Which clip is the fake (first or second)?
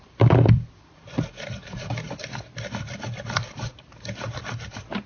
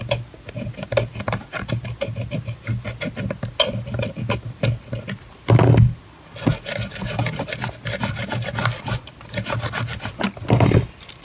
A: first